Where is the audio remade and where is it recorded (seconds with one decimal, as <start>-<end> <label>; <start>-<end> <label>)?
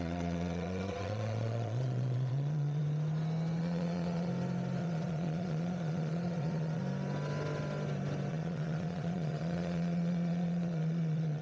0.0-2.8 remade; 2.8-3.6 recorded; 3.6-4.3 remade; 4.3-4.8 recorded; 4.8-6.8 remade; 6.8-8.3 recorded; 8.3-11.4 remade